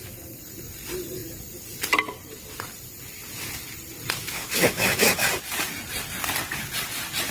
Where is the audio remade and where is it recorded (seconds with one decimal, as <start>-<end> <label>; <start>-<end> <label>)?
0.0-4.2 recorded; 4.2-5.3 remade; 5.3-7.3 recorded